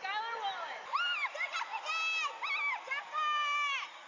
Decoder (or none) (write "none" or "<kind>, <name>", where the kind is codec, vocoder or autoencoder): none